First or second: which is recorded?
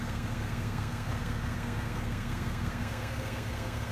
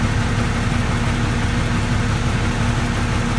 second